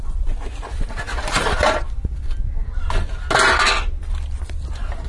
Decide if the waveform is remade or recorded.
recorded